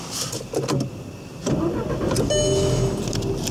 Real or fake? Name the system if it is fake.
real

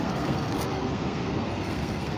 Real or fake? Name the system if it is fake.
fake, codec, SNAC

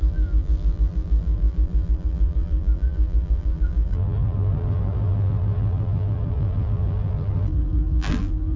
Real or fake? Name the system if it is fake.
fake, vocoder, BigVGAN v2